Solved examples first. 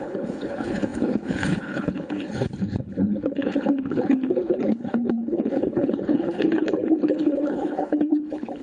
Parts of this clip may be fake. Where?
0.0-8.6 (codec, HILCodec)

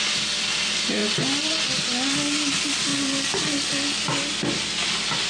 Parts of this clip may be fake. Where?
none

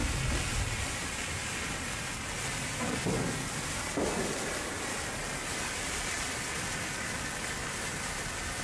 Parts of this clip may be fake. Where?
none

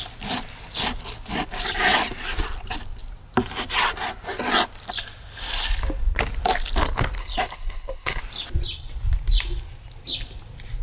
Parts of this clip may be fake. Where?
7.2-8.2 (codec, HILCodec)

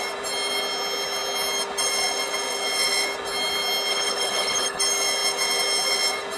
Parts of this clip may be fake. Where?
3.9-4.8 (codec, HILCodec)

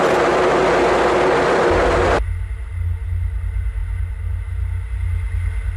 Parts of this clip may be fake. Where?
none

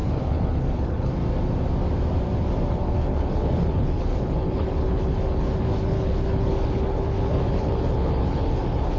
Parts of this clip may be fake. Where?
0.0-1.2 (codec, HILCodec); 2.7-9.0